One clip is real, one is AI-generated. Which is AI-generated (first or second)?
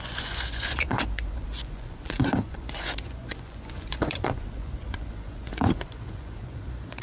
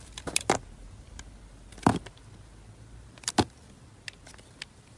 first